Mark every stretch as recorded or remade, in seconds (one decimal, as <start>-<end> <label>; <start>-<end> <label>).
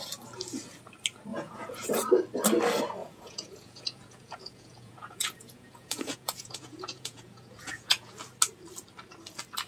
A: 0.0-1.3 recorded; 1.3-1.9 remade; 1.9-3.0 recorded; 3.0-8.1 remade; 8.1-9.7 recorded